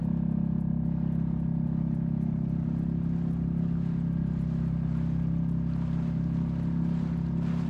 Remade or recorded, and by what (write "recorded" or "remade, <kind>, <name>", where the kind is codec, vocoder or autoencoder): recorded